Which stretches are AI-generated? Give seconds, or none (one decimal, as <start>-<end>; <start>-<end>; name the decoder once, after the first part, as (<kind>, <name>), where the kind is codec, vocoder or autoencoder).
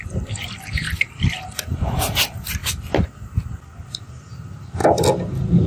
none